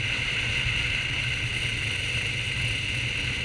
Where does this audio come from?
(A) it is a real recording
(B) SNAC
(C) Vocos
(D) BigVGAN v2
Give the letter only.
A